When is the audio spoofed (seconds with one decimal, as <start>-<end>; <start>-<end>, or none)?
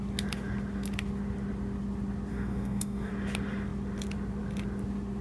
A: 2.3-3.1